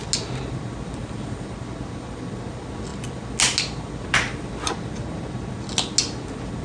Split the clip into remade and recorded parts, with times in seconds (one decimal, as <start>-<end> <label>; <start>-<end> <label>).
0.0-6.6 recorded

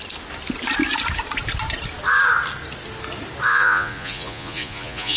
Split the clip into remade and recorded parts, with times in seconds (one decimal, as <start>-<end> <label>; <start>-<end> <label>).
0.0-3.5 recorded; 3.5-5.2 remade